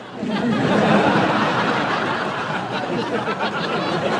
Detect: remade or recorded recorded